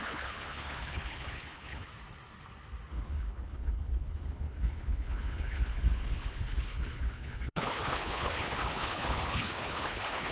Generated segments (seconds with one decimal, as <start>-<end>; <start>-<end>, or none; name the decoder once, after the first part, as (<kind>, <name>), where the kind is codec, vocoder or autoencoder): 0.0-1.9 (codec, HILCodec); 2.9-10.3